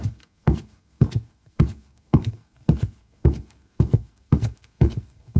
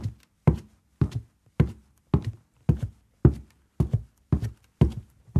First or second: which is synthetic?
first